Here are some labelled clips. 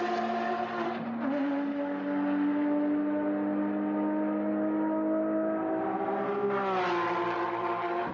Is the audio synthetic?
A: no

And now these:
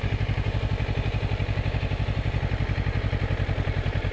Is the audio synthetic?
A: no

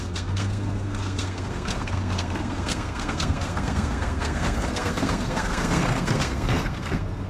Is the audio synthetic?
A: yes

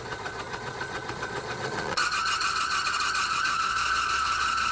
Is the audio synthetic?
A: yes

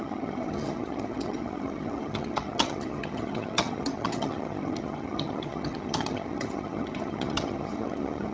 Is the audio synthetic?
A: yes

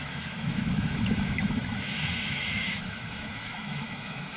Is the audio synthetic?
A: yes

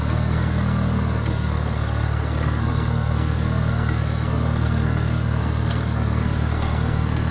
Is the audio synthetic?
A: yes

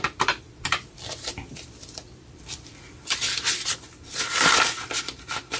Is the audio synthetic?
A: yes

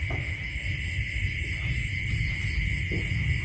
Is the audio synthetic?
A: no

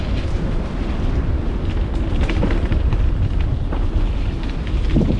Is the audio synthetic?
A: no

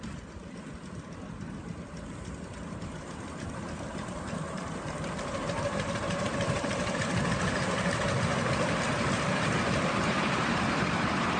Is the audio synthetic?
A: yes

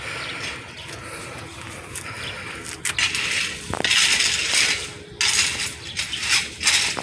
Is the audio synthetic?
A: no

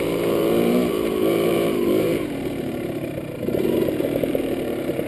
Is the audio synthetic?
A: yes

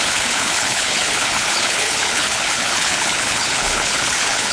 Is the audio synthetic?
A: yes